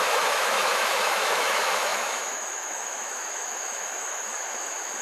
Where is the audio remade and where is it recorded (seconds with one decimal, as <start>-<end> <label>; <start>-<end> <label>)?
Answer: 0.0-5.0 remade